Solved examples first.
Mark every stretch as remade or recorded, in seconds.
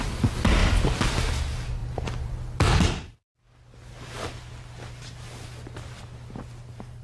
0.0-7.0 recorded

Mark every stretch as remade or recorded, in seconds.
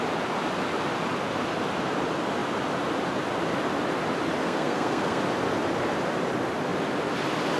0.0-4.4 recorded; 4.4-5.2 remade; 5.2-7.6 recorded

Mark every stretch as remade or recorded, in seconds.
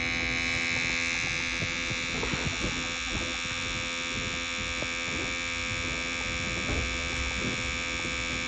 0.0-8.5 recorded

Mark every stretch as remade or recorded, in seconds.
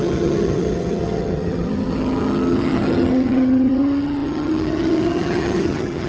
0.0-6.1 remade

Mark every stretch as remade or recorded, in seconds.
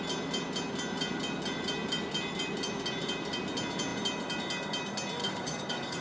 0.0-5.2 recorded; 5.2-6.0 remade